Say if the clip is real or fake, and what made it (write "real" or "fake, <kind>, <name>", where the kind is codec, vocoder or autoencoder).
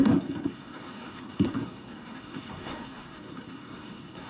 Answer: fake, codec, SNAC